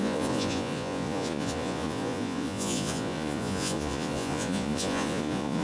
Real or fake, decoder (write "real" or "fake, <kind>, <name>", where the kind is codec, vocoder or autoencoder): fake, vocoder, Vocos